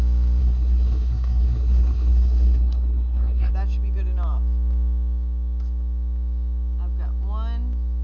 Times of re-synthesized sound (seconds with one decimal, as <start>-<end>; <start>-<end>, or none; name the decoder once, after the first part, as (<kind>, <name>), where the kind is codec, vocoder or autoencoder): 0.4-3.5 (codec, SNAC)